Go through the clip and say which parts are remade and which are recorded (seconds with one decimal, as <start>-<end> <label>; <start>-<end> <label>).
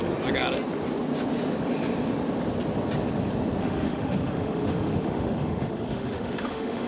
0.0-3.6 recorded; 3.6-6.9 remade